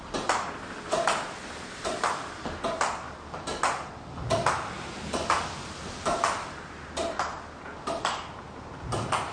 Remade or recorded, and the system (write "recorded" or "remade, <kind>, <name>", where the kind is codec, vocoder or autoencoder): recorded